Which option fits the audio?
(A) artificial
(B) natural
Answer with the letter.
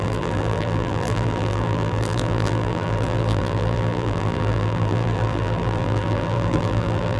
A